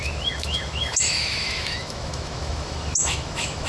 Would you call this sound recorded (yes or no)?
no